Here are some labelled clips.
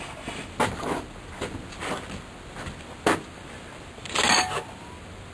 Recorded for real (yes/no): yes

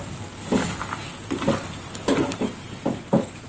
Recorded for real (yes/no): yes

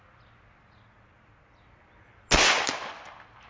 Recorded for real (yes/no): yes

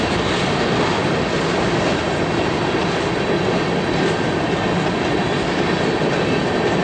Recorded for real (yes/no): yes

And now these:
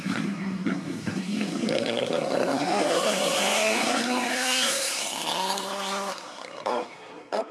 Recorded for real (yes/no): no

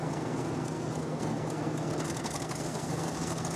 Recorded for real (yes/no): no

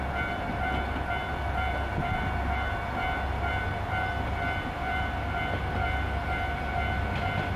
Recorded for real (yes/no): yes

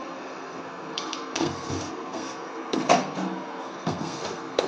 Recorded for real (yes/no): no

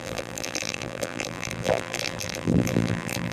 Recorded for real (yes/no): no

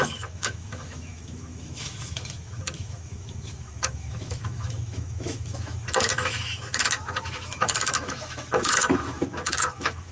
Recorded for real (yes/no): no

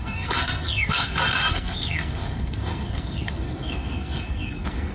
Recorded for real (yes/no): no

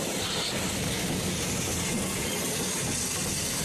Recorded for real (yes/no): yes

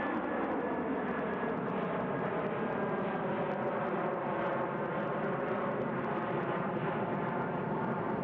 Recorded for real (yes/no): yes